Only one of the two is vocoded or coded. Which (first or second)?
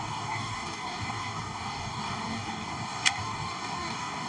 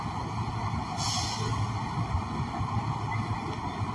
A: first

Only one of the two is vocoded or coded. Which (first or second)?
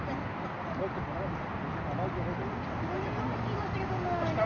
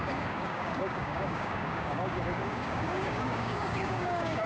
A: second